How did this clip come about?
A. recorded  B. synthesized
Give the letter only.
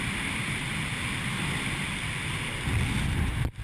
A